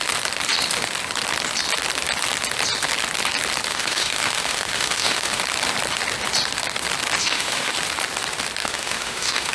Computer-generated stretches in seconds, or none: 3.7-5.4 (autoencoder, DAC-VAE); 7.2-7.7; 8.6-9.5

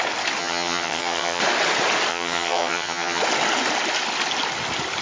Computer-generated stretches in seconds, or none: 0.4-1.4 (vocoder, HiFi-GAN); 2.1-3.2

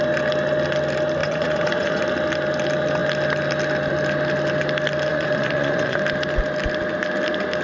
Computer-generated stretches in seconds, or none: 1.2-2.0 (vocoder, Vocos); 5.1-6.0

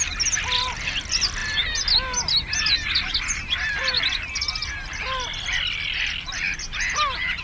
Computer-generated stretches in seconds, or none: none

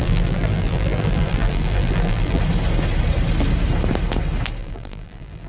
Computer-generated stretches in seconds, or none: 0.0-2.4 (vocoder, BigVGAN v2); 4.6-5.5

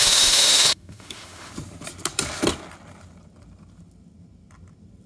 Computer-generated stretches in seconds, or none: 0.0-1.5 (autoencoder, DAC-VAE)

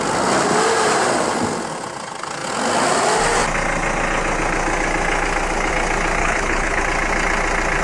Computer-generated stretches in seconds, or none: 6.2-6.8 (codec, HILCodec)